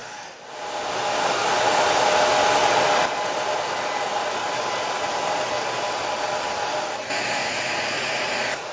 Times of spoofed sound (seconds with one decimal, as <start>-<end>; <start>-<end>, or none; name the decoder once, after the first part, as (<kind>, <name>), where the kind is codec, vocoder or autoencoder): 7.4-8.7 (vocoder, Vocos)